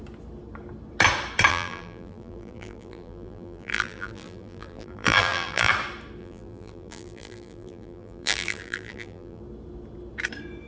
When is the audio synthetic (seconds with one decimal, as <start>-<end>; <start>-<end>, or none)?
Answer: 1.5-5.7; 6.2-9.4